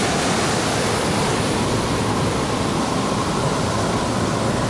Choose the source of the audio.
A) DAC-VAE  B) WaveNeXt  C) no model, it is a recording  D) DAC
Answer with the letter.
C